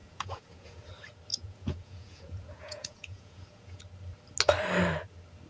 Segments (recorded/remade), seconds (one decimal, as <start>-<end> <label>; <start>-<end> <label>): 0.0-0.9 remade; 0.9-1.3 recorded; 1.3-3.8 remade; 3.8-5.5 recorded